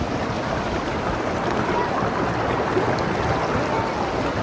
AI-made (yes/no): no